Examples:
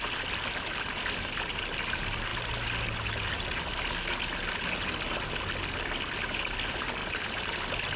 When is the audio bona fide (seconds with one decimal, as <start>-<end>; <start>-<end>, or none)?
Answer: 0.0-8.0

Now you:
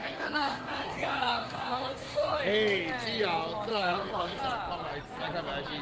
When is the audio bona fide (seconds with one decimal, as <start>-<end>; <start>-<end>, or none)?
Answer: 2.4-3.7; 4.4-5.8

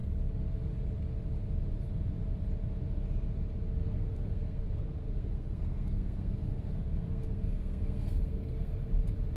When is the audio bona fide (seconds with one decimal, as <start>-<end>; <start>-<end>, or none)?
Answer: 0.0-3.8; 8.9-9.4

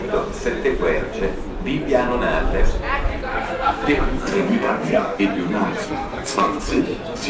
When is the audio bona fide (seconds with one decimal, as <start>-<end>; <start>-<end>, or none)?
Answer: 0.0-3.3; 5.2-5.8; 6.8-7.3